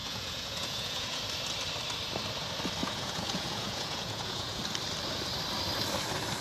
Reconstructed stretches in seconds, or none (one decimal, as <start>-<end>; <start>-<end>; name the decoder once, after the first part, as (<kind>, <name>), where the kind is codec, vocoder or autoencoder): 0.0-1.2 (vocoder, Vocos); 2.8-4.6